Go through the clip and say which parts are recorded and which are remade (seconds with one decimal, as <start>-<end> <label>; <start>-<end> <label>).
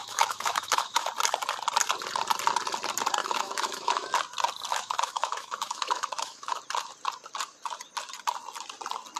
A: 0.0-1.1 remade; 1.1-3.2 recorded; 3.2-4.1 remade; 4.1-4.7 recorded; 4.7-6.6 remade; 6.6-9.2 recorded